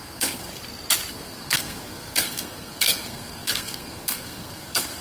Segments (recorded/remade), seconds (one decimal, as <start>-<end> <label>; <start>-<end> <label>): 0.0-0.5 remade; 0.5-1.1 recorded; 1.1-5.0 remade